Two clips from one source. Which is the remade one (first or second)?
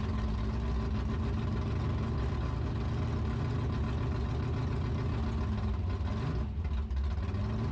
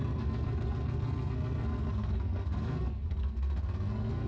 second